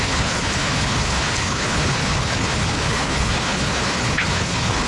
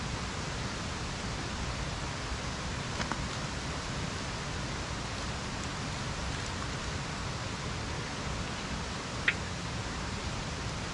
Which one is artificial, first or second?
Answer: first